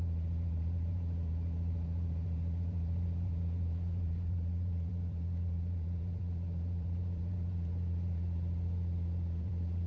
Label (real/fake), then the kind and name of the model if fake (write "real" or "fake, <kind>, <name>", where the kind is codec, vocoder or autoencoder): fake, vocoder, BigVGAN v2